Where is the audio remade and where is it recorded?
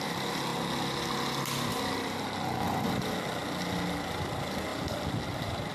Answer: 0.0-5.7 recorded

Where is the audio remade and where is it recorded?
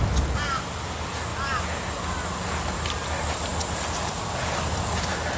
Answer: 0.0-5.4 recorded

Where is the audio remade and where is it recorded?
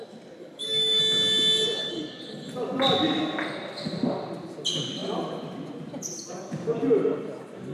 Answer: 0.0-0.4 recorded; 0.4-1.0 remade; 1.0-1.8 recorded; 1.8-2.5 remade; 2.5-7.7 recorded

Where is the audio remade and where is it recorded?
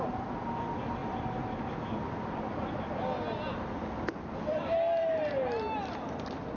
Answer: 0.0-6.6 recorded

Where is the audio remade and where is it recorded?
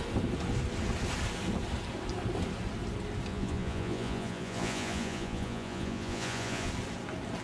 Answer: 0.0-3.3 recorded; 3.3-6.7 remade; 6.7-7.4 recorded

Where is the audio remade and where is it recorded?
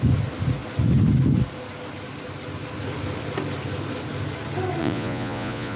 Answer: 0.0-4.8 recorded; 4.8-5.8 remade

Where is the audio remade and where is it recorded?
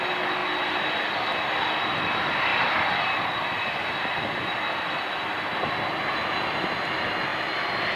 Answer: 0.0-2.5 recorded; 2.5-6.0 remade; 6.0-7.3 recorded; 7.3-8.0 remade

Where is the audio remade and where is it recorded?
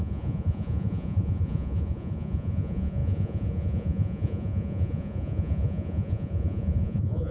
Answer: 0.0-7.3 remade